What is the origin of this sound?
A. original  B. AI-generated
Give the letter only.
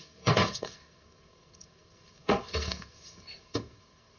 B